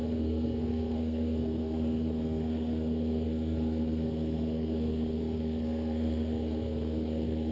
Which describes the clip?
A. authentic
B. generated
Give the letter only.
B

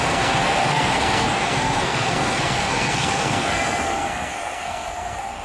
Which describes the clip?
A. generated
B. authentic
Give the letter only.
A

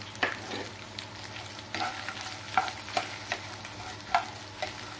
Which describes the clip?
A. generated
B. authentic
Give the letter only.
B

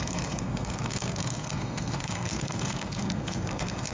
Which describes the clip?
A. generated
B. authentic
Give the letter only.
A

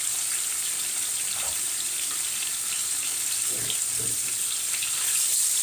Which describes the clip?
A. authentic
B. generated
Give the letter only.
A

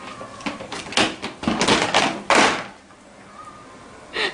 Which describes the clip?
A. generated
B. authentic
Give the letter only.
B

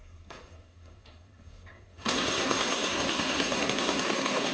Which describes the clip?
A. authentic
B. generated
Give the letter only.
B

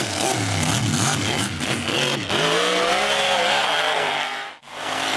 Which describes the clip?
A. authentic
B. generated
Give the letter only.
B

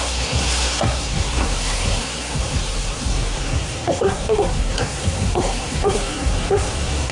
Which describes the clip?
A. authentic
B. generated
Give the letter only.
B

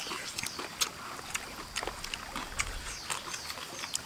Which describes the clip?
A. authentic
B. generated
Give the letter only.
A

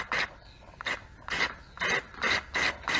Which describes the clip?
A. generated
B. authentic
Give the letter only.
B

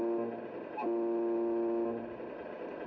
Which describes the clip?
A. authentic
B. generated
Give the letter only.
A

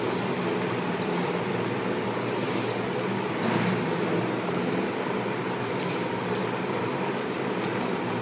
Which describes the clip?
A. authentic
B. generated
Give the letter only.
A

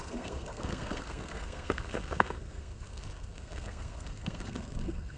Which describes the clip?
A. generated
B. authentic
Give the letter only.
A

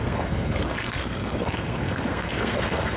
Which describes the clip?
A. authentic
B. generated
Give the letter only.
B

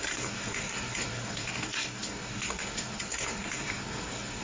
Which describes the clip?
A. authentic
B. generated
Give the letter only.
B